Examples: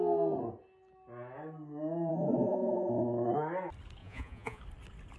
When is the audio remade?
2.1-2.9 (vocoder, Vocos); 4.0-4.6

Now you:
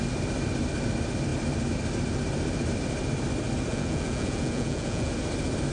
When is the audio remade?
3.7-5.1 (vocoder, Vocos)

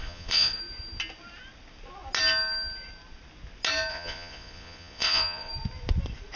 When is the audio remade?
0.0-0.6 (vocoder, Vocos); 3.9-5.5

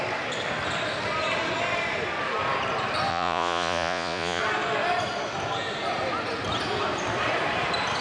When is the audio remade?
3.1-4.4 (vocoder, Vocos)